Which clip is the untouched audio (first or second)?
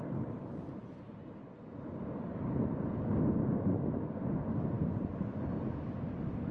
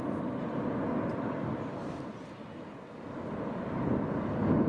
second